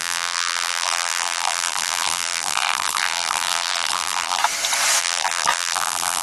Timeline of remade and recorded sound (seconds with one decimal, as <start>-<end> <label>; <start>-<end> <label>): 0.0-4.4 remade; 4.4-5.0 recorded; 5.0-6.2 remade

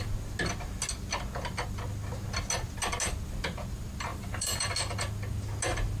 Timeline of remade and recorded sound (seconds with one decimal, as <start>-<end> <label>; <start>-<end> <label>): 0.0-4.1 recorded; 4.1-4.7 remade; 4.7-6.0 recorded

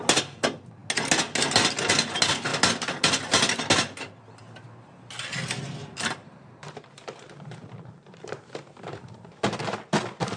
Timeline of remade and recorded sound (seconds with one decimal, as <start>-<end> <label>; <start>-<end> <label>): 0.0-6.2 recorded; 6.2-9.6 remade; 9.6-10.4 recorded

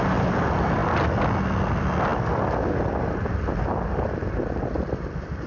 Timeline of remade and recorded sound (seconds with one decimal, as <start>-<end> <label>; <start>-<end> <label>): 0.0-5.5 recorded

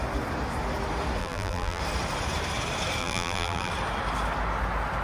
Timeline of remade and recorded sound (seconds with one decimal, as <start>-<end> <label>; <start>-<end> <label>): 0.0-1.2 recorded; 1.2-1.8 remade; 1.8-3.0 recorded; 3.0-3.7 remade; 3.7-5.0 recorded

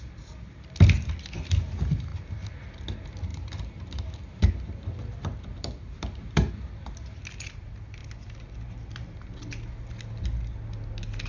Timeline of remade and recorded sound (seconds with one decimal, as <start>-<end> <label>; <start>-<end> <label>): 0.0-3.3 recorded; 3.3-6.5 remade; 6.5-11.3 recorded